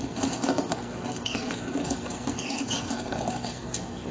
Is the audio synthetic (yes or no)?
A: yes